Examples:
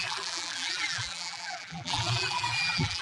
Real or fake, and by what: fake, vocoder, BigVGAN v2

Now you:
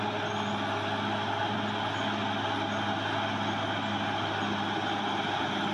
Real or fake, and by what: real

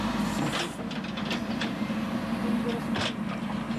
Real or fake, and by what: real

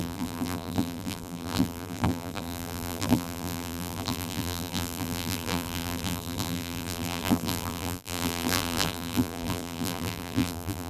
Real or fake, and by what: fake, vocoder, BigVGAN v2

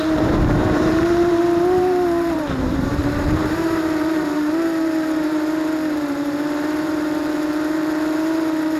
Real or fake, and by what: fake, vocoder, BigVGAN v2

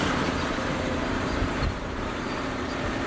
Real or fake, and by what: fake, vocoder, BigVGAN v2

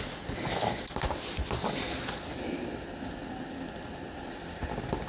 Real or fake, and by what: real